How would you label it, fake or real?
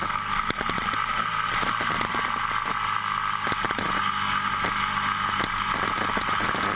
real